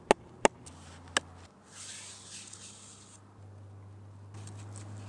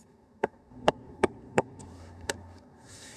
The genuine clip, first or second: first